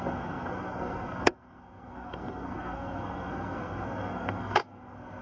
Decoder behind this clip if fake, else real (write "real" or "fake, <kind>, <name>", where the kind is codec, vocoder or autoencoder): fake, codec, SNAC